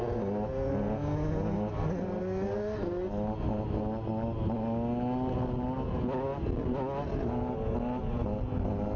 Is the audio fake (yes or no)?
no